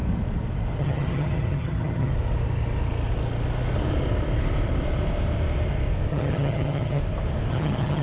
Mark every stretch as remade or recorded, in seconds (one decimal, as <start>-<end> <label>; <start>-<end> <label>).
0.0-0.8 recorded; 0.8-2.1 remade; 2.1-6.1 recorded; 6.1-7.0 remade; 7.0-7.5 recorded; 7.5-8.0 remade